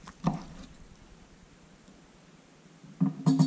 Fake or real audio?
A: real